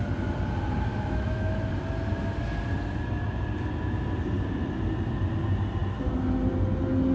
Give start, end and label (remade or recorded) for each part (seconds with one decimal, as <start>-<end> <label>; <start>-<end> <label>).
0.0-0.9 recorded; 0.9-1.7 remade; 1.7-7.1 recorded